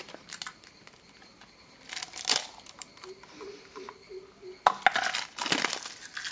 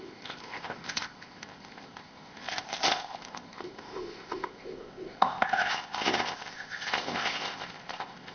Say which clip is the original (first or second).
first